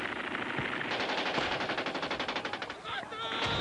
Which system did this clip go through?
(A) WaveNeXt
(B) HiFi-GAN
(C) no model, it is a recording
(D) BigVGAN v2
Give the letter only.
C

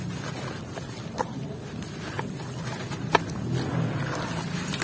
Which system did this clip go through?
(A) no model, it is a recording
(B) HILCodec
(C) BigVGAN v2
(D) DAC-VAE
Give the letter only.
A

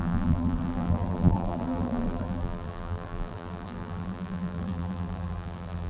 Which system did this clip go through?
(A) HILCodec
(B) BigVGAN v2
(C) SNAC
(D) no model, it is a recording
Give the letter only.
B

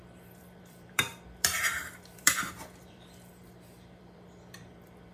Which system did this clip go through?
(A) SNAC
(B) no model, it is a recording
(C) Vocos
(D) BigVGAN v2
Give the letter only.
D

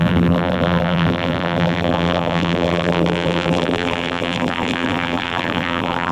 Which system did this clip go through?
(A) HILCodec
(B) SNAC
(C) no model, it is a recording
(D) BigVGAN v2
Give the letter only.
D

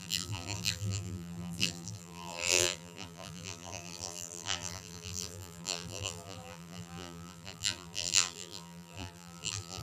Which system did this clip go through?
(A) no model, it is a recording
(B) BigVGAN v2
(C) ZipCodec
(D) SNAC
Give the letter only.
B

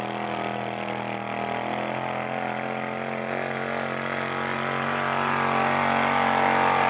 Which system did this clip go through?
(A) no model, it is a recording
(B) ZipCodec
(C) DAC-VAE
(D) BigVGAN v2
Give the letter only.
A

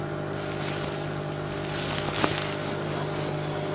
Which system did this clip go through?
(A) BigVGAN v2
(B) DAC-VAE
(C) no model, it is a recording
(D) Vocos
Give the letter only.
C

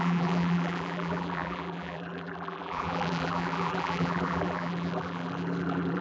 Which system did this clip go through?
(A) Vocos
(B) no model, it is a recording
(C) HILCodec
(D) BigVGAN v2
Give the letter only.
D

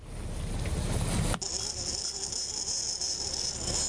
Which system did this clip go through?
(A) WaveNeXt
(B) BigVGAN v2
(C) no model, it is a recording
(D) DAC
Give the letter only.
C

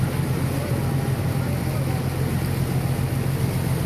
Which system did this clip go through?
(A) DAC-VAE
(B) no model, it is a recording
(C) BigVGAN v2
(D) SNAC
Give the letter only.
B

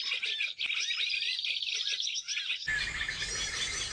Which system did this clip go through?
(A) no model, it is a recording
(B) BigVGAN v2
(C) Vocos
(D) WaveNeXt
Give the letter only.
A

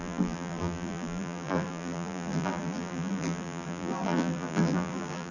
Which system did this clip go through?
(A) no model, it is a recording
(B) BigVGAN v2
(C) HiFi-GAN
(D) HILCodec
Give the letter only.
B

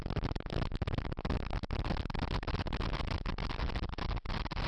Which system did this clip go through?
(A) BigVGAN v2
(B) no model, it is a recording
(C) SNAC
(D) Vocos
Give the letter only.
B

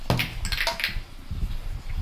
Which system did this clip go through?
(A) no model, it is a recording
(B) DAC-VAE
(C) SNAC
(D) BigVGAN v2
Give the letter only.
A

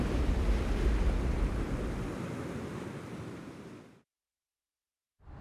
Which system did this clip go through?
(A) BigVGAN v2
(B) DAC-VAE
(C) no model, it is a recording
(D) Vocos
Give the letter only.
C